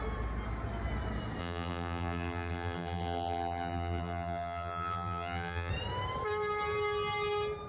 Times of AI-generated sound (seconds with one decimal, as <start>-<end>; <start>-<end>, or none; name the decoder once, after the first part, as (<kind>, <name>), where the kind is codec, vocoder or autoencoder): 1.4-5.7 (vocoder, BigVGAN v2)